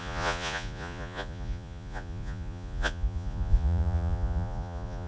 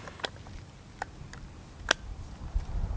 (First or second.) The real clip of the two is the second